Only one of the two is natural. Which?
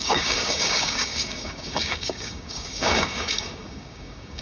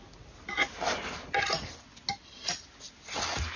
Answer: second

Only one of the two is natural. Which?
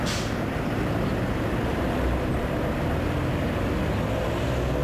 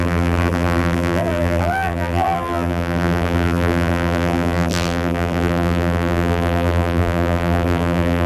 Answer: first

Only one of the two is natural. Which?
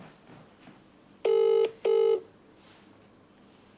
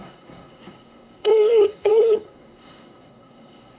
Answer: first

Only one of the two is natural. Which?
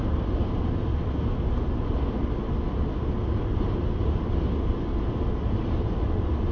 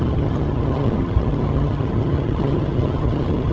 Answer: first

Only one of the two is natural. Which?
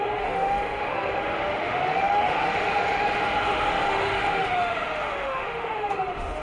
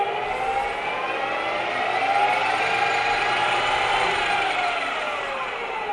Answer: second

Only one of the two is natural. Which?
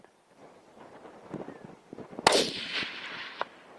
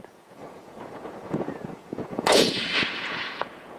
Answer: first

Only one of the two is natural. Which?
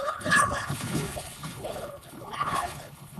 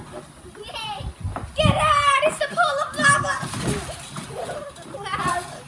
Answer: second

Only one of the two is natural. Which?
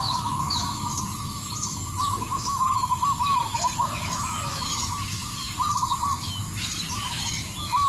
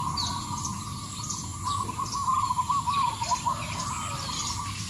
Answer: second